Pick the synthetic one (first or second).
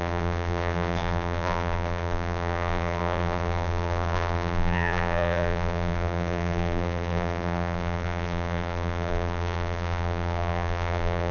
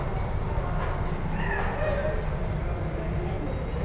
first